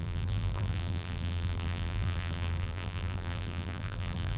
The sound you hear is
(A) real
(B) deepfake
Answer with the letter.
B